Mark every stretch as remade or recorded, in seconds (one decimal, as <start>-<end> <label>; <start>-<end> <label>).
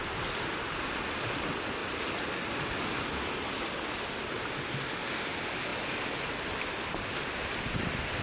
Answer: 0.0-1.8 recorded; 1.8-2.3 remade; 2.3-5.7 recorded; 5.7-8.2 remade